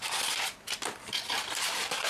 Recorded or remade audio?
remade